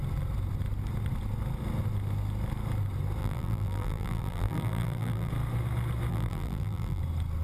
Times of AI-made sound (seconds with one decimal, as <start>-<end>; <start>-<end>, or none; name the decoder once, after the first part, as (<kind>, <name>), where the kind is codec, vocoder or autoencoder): 3.2-5.3 (vocoder, BigVGAN v2); 6.1-7.0